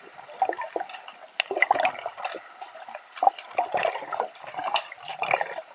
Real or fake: real